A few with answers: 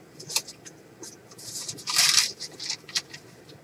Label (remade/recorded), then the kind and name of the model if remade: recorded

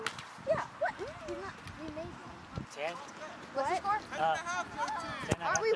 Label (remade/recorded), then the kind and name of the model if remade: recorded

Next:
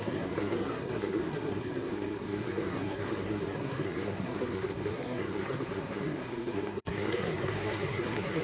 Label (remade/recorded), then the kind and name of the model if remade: remade, codec, SNAC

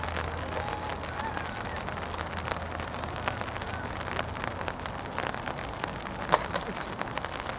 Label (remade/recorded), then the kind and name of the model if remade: recorded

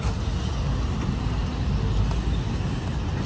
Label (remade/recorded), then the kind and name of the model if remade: recorded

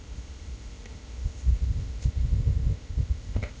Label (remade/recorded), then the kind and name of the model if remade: remade, codec, ZipCodec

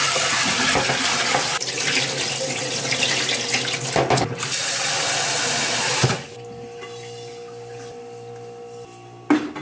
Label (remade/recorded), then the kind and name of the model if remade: recorded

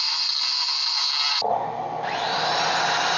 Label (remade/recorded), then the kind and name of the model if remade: recorded